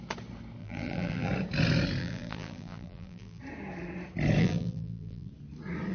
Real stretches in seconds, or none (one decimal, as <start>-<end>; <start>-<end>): 0.0-0.6; 1.3-2.0; 3.4-4.4; 5.3-5.9

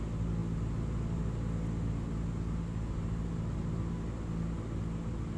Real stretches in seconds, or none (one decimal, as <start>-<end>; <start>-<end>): 0.0-5.4

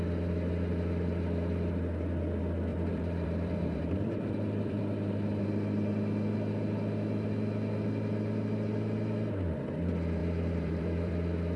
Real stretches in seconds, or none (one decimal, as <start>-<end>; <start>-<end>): 0.0-2.7; 4.8-10.2; 11.1-11.6

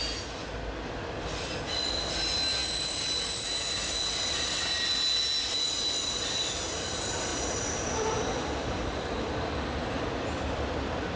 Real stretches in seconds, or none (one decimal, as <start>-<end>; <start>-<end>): 0.0-7.3

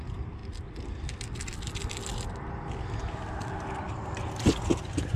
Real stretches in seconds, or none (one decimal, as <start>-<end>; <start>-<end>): 0.0-5.2